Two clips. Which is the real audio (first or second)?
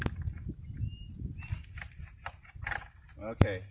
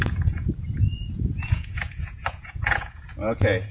first